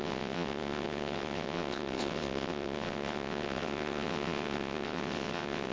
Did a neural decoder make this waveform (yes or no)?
yes